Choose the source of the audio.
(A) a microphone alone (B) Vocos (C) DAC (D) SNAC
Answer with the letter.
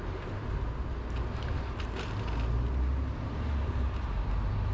A